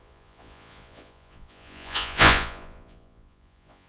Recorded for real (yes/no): no